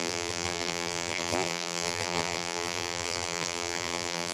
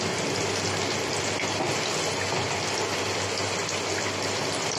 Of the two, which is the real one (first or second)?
second